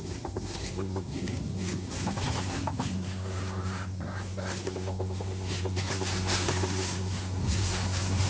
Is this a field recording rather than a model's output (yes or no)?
no